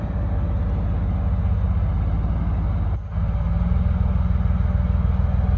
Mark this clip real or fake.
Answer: real